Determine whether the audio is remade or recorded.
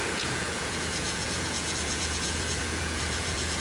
remade